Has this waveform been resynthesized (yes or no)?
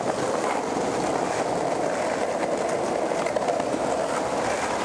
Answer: no